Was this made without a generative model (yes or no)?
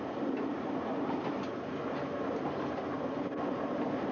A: yes